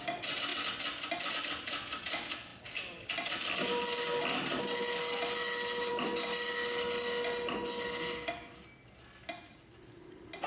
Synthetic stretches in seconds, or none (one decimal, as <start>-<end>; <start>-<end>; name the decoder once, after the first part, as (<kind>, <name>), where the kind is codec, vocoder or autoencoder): none

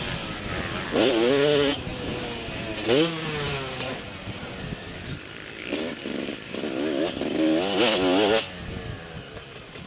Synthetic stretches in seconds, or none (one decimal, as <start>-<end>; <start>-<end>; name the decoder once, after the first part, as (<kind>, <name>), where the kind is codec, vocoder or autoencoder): 3.9-5.6 (vocoder, BigVGAN v2)